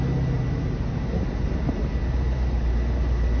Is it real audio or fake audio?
real